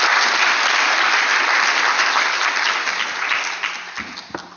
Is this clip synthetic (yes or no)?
no